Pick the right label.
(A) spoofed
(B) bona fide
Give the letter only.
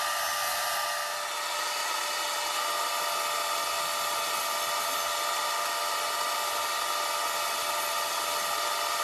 B